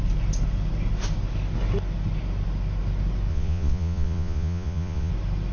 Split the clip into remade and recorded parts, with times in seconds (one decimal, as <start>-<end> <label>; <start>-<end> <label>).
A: 0.0-3.3 recorded; 3.3-5.1 remade; 5.1-5.5 recorded